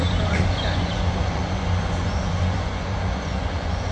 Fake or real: fake